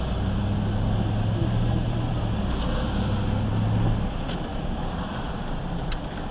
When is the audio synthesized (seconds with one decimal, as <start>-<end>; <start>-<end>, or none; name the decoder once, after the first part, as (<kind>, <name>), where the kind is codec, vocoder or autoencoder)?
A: 1.4-2.2 (vocoder, BigVGAN v2); 4.5-5.6